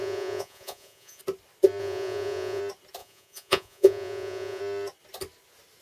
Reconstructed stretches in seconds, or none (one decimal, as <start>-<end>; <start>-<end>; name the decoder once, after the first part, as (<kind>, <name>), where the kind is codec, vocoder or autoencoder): 0.0-1.2 (vocoder, Vocos); 1.8-2.6; 3.0-4.6